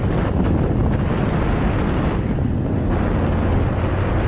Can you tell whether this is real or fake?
real